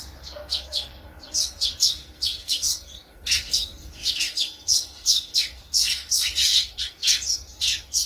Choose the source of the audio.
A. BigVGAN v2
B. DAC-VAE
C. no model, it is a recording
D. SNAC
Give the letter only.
D